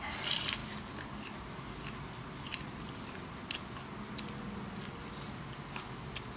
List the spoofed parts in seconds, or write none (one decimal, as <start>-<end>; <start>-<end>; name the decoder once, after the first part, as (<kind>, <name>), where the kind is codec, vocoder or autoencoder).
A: none